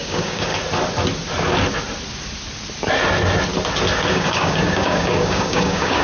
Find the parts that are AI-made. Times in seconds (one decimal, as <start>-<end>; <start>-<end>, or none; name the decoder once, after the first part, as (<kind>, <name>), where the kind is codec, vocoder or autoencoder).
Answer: 0.0-0.5 (codec, DAC); 4.1-6.0